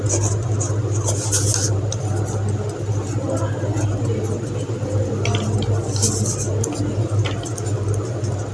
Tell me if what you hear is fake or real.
real